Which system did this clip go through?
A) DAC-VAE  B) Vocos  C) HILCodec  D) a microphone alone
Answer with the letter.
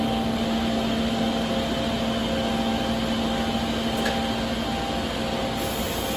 D